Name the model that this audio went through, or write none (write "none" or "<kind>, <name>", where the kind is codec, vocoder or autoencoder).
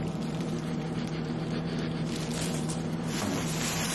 vocoder, BigVGAN v2